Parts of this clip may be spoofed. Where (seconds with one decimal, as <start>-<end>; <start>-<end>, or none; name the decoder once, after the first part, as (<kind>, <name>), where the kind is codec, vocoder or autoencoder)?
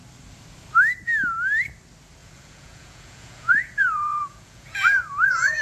2.2-5.6 (vocoder, Vocos)